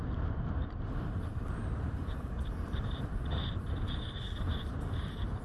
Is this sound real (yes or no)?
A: no